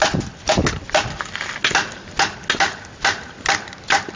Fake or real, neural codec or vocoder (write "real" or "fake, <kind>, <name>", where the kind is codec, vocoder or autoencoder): real